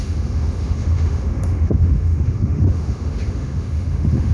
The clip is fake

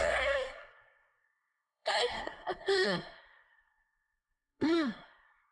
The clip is fake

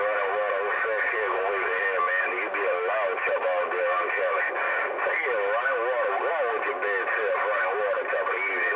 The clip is real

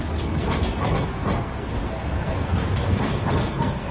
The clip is fake